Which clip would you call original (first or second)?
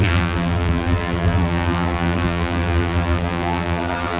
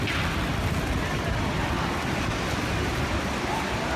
second